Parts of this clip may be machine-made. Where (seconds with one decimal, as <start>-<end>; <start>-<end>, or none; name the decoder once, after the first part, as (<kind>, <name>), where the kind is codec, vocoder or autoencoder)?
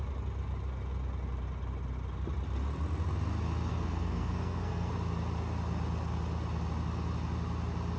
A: 3.7-4.9 (codec, SNAC)